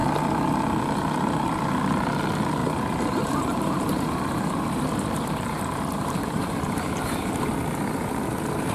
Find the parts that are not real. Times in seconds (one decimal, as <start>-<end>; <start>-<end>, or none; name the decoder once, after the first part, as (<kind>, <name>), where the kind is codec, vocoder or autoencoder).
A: 2.6-7.5 (vocoder, BigVGAN v2)